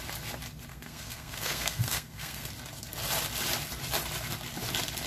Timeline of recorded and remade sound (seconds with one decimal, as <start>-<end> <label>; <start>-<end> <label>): 0.0-0.7 recorded; 0.7-2.5 remade; 2.5-5.1 recorded